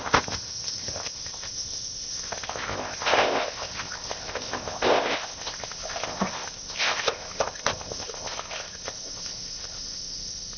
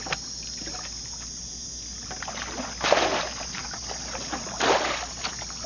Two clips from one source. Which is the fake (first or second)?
first